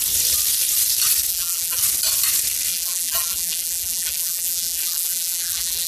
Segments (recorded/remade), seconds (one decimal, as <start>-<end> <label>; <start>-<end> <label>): 0.0-1.3 recorded; 1.3-1.8 remade; 1.8-2.7 recorded; 2.7-5.9 remade